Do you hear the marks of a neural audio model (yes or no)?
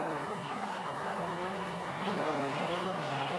yes